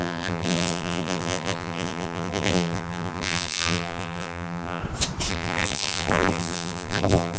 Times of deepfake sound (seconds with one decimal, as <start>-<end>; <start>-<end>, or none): 0.0-4.8; 5.3-7.4